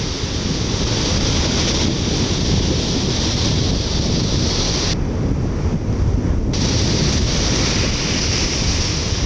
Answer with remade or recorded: recorded